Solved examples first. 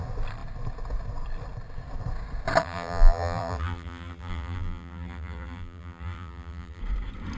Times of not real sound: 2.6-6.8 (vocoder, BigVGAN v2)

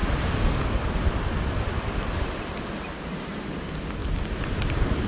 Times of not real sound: none

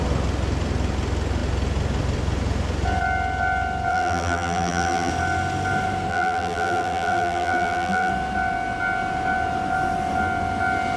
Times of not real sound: 3.9-5.1 (vocoder, BigVGAN v2); 6.1-8.1

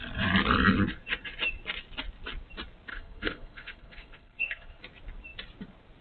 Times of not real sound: 2.9-4.8 (codec, SNAC)

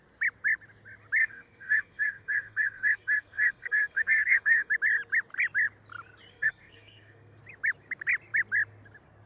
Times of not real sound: 1.2-4.7 (codec, SNAC); 6.3-7.4